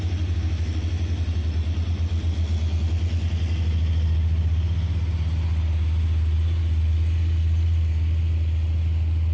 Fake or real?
real